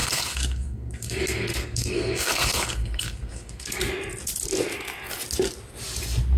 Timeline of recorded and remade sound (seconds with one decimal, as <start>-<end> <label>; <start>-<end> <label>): 0.0-3.8 remade; 3.8-6.4 recorded